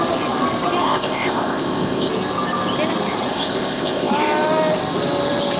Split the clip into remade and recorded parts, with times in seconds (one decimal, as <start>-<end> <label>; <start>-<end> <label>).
0.0-0.8 recorded; 0.8-2.1 remade; 2.1-3.3 recorded; 3.3-4.1 remade; 4.1-5.6 recorded